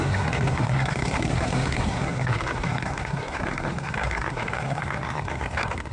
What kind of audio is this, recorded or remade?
remade